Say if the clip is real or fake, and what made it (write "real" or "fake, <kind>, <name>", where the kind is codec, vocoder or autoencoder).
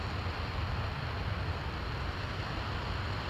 real